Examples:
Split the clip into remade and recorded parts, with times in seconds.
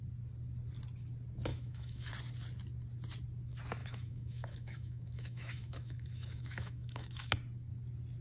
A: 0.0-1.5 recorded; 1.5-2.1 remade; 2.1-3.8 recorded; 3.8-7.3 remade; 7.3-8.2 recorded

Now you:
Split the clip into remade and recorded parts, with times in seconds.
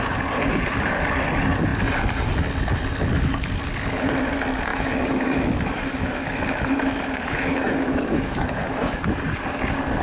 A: 0.0-4.7 recorded; 4.7-9.0 remade; 9.0-10.0 recorded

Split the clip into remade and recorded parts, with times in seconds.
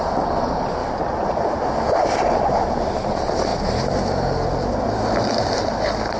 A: 0.0-6.2 recorded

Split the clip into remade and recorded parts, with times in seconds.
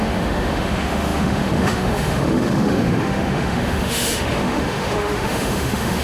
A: 0.0-6.0 remade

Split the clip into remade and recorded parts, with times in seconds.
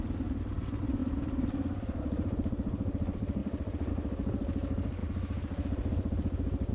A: 0.0-6.7 recorded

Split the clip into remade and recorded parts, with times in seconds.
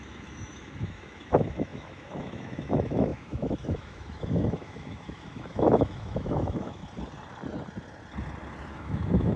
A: 0.0-6.8 remade; 6.8-8.7 recorded; 8.7-9.4 remade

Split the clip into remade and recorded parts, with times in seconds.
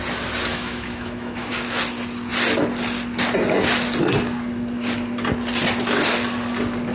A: 0.0-0.5 recorded; 0.5-1.5 remade; 1.5-6.9 recorded